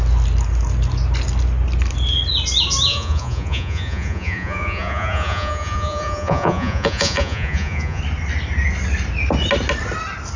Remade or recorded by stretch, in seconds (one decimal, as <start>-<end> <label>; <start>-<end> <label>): 0.0-2.9 recorded; 2.9-8.0 remade; 8.0-10.4 recorded